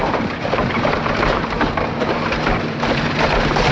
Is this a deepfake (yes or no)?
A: yes